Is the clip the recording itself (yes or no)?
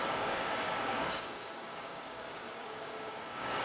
no